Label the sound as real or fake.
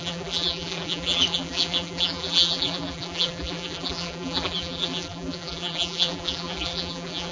fake